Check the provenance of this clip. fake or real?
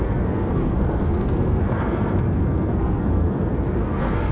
fake